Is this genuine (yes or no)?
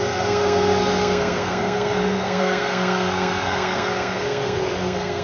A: no